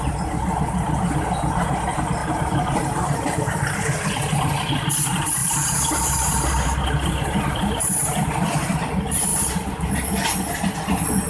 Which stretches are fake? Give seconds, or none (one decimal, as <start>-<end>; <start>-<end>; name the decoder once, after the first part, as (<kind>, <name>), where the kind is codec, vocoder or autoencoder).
2.2-3.6 (vocoder, BigVGAN v2); 5.4-8.3; 9.3-10.1